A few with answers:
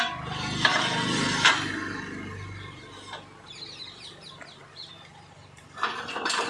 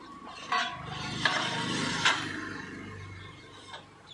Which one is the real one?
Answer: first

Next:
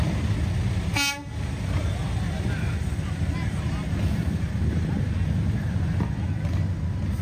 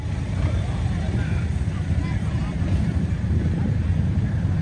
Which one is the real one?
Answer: first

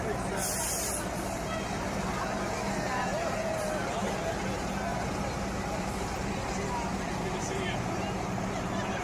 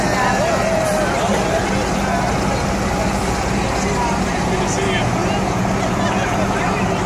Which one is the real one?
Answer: second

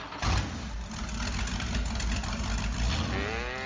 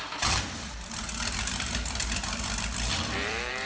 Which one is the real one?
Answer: first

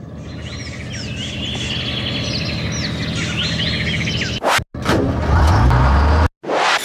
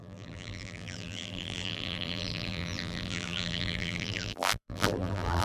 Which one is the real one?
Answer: first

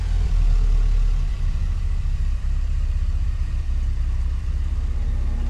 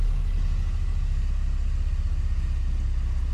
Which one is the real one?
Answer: second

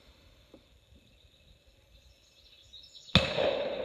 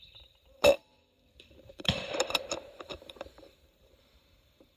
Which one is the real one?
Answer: first